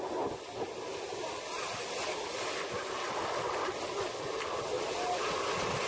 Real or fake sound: real